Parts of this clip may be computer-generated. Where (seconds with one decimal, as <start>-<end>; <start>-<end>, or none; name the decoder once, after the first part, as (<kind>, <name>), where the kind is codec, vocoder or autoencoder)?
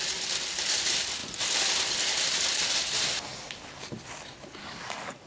4.6-5.3 (codec, DAC)